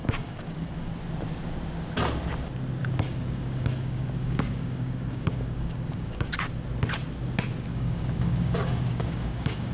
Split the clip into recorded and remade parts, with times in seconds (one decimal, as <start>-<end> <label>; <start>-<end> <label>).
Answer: 0.0-0.9 remade; 0.9-2.8 recorded; 2.8-6.3 remade; 6.3-7.7 recorded; 7.7-9.7 remade